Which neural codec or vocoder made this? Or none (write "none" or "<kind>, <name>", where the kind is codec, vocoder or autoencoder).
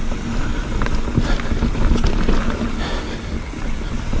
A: none